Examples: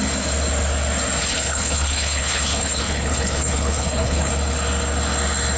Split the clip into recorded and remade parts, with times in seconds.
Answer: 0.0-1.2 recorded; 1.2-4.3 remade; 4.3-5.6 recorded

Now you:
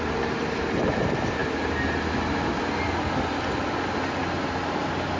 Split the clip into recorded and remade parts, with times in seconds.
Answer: 0.0-5.2 recorded

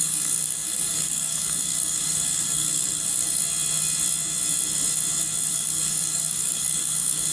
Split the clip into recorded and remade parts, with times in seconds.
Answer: 0.0-3.4 remade; 3.4-5.5 recorded; 5.5-7.3 remade